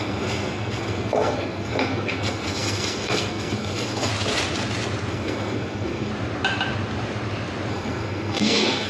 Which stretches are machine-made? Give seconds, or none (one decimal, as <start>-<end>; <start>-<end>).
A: 0.0-4.1; 5.1-6.1; 7.7-8.9